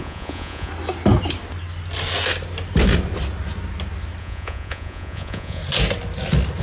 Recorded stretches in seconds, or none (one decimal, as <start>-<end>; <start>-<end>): 0.7-4.2; 5.6-6.6